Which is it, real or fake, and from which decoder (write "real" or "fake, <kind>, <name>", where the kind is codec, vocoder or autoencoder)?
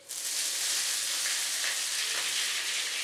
real